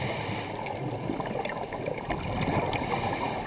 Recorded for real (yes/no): yes